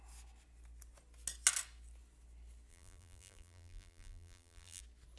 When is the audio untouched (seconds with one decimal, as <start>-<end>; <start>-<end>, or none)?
0.0-2.7; 4.8-5.2